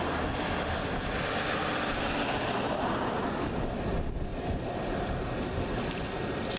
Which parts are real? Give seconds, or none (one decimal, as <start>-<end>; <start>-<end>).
0.0-6.6